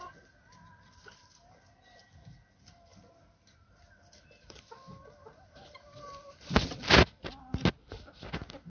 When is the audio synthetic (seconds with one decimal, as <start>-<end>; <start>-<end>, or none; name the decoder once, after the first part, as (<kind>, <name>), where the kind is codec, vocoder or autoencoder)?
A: none